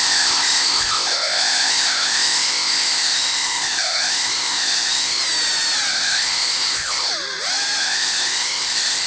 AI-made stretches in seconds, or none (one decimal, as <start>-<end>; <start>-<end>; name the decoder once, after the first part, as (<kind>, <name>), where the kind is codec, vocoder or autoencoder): 0.0-5.2 (codec, ZipCodec); 5.9-7.1; 7.8-9.1